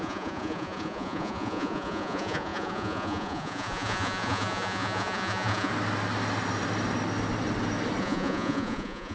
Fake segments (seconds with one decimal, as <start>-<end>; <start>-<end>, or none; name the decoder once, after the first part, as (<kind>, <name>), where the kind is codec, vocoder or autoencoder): 0.0-5.7 (vocoder, Vocos); 8.0-9.1